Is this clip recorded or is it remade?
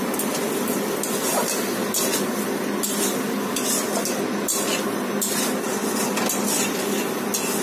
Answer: recorded